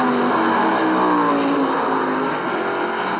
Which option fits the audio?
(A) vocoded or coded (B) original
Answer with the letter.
B